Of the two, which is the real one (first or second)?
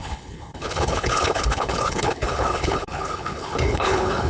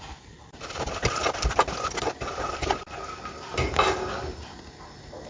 second